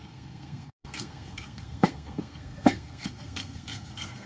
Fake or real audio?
fake